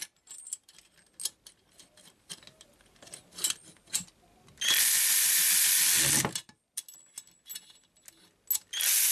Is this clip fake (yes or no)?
no